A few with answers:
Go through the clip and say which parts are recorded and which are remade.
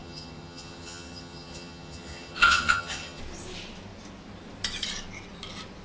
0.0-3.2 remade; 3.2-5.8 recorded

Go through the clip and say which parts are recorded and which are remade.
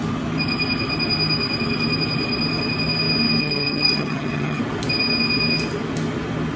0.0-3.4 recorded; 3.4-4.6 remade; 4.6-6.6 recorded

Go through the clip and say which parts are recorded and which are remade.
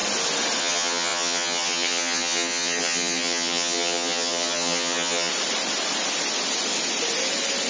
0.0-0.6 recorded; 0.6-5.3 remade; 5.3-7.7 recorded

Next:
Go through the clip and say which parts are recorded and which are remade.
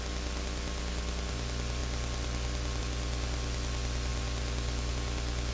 0.0-5.5 recorded